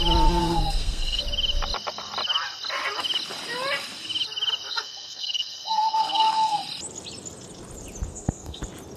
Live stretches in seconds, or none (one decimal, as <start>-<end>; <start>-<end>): 0.0-0.4; 1.2-4.7; 6.6-8.1; 8.6-9.0